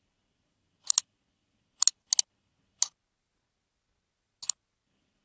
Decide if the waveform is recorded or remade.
recorded